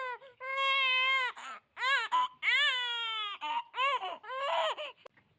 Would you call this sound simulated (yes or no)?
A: no